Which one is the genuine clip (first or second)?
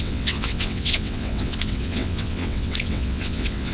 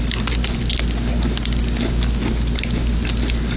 second